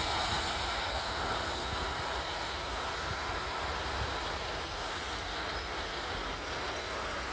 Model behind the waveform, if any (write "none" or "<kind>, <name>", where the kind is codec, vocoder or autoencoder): none